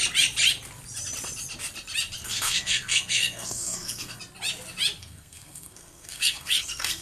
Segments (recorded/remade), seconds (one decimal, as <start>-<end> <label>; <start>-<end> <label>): 0.0-2.2 recorded; 2.2-4.2 remade; 4.2-5.0 recorded; 5.0-7.0 remade